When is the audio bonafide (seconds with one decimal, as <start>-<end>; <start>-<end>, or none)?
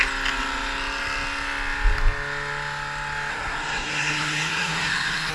0.0-3.3